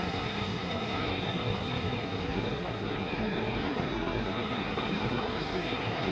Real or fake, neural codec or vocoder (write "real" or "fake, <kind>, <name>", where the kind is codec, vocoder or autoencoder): fake, codec, SNAC